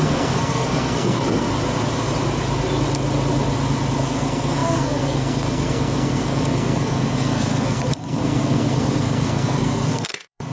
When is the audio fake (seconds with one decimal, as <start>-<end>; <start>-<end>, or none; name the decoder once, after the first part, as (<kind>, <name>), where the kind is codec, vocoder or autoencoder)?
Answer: 0.0-1.5 (codec, SNAC); 4.0-10.5